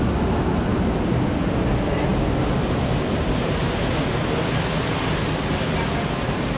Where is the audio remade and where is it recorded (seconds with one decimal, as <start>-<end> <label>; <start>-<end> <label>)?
0.0-6.6 recorded